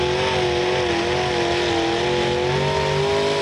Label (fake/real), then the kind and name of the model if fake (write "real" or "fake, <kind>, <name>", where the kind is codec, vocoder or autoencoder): real